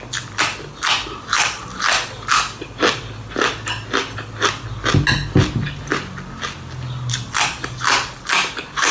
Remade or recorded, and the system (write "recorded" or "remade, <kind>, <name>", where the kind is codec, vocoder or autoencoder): recorded